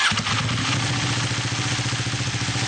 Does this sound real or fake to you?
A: real